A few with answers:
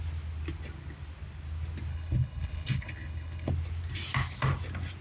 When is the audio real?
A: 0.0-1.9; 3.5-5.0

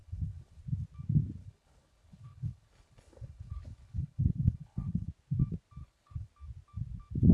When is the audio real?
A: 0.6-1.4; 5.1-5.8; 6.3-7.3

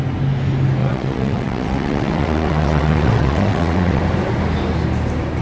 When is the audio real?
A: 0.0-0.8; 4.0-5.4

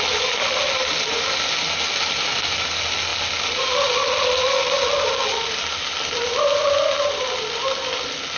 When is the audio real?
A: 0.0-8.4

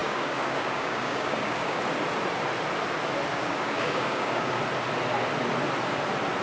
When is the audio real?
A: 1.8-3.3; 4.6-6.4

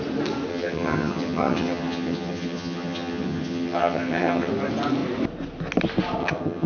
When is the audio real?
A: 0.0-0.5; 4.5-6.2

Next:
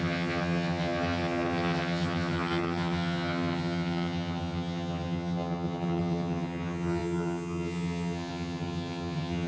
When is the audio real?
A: none

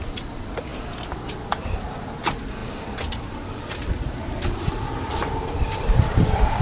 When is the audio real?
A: 0.0-2.6